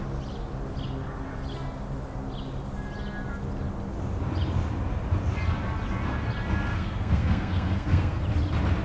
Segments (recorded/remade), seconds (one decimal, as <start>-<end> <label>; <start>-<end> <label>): 0.0-6.7 recorded; 6.7-8.2 remade; 8.2-8.8 recorded